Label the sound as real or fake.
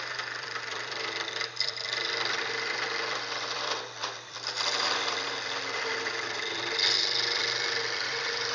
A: fake